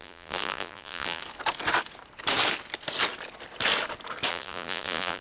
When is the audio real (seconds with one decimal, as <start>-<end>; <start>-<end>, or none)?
1.2-4.3